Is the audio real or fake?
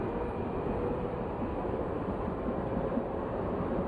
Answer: real